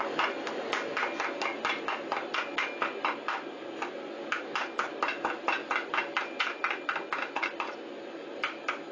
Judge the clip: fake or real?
real